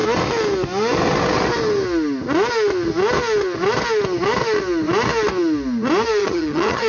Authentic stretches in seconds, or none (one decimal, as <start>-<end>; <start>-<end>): 0.0-6.2